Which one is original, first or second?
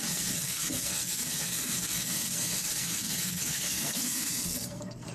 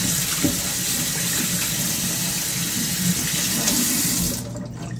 second